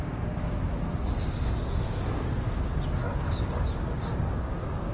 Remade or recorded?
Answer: remade